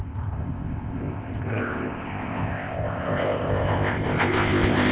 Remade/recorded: remade